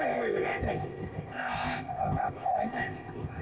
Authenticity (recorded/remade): remade